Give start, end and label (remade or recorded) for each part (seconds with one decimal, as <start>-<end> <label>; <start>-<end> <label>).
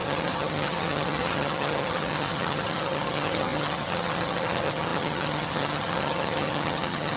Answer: 0.0-7.2 remade